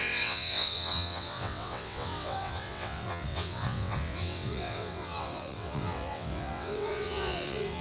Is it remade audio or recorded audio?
remade